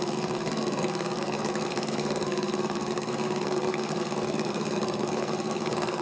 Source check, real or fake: fake